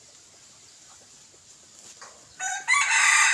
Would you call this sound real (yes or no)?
yes